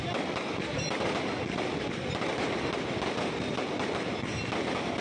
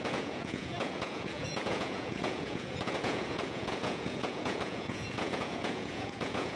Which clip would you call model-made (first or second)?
second